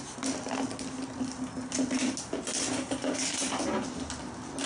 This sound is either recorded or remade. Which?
recorded